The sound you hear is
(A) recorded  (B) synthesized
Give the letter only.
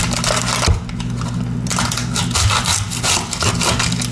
A